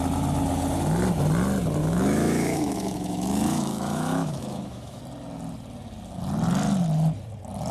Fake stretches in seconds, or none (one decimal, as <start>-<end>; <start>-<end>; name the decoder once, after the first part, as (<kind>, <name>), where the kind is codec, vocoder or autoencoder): 1.8-5.0 (autoencoder, DAC-VAE)